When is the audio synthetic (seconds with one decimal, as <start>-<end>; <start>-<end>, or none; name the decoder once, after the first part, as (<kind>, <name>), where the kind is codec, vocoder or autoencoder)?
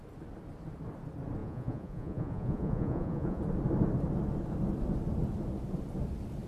1.4-3.4 (vocoder, Vocos)